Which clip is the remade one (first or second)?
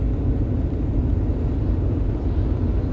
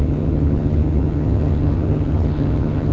second